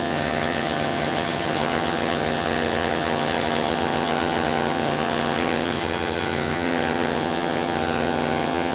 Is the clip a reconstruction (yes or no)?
yes